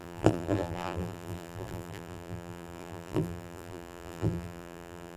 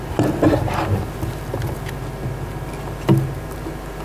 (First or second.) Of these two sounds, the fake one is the first